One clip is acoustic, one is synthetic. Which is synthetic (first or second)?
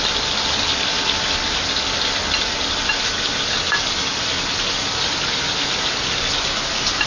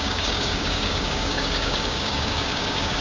second